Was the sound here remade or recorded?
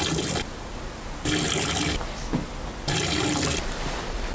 recorded